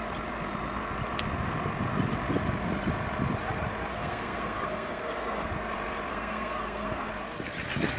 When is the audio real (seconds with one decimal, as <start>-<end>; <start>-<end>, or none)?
0.0-3.9; 5.5-6.1; 7.1-8.0